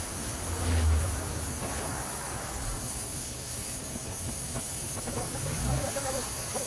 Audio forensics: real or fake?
fake